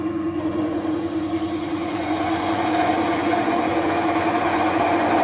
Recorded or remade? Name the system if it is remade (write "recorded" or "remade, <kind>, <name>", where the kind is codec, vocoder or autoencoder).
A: remade, vocoder, Vocos